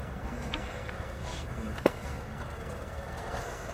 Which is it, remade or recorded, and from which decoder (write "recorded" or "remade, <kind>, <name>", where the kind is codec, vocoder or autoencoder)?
remade, codec, SNAC